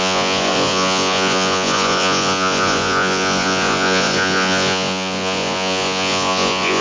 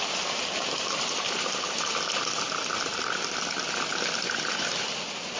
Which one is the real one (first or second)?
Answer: second